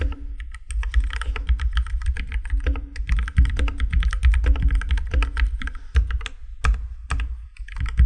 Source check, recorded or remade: recorded